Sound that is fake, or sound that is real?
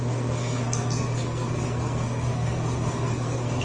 fake